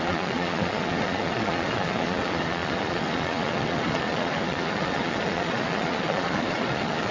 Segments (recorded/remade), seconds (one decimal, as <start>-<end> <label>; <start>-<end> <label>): 0.0-7.1 remade